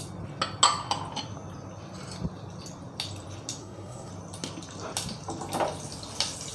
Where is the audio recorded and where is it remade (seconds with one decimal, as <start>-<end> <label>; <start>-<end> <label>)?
0.0-3.6 recorded; 3.6-4.1 remade; 4.1-6.5 recorded